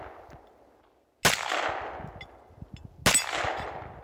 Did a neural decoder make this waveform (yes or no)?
no